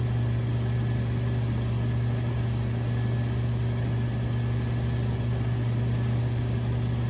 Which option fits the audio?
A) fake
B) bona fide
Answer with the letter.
B